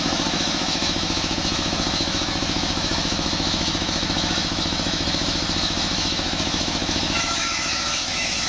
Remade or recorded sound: remade